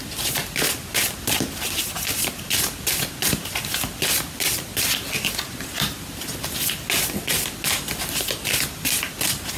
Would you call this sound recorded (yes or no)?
yes